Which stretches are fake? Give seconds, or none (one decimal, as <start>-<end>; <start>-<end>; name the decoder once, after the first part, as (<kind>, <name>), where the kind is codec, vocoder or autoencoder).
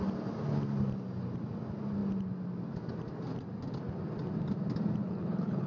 5.0-5.7 (codec, HILCodec)